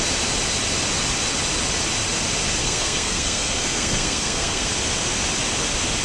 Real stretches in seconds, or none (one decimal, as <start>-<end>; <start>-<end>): 0.0-2.6; 4.7-6.0